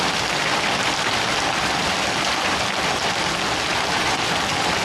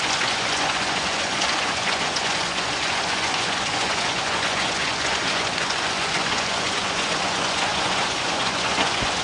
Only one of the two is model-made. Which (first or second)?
second